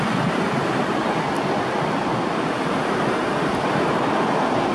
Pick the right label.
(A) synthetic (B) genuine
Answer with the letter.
B